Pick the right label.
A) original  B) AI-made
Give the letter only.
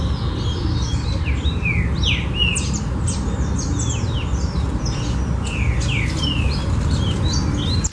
A